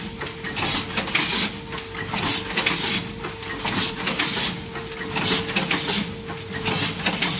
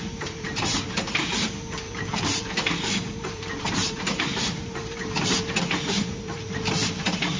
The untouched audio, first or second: first